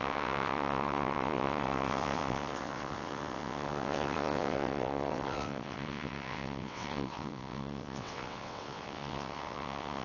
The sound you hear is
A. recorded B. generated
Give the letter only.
B